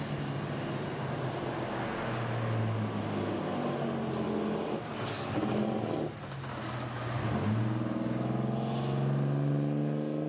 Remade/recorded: recorded